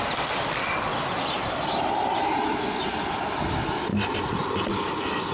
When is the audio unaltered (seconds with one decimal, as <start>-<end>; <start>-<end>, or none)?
0.0-5.3